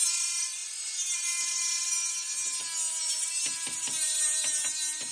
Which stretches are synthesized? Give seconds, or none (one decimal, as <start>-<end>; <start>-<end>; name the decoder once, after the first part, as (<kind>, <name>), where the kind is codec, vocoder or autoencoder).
none